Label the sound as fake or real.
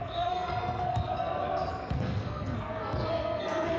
fake